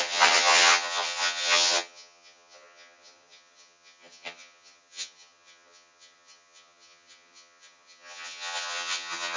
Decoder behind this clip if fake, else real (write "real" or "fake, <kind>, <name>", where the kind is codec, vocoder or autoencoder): fake, vocoder, HiFi-GAN